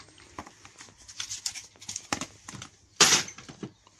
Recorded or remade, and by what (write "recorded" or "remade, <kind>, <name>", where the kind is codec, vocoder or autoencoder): remade, vocoder, BigVGAN v2